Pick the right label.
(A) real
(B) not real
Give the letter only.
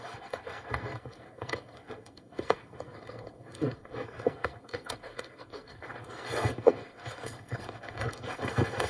B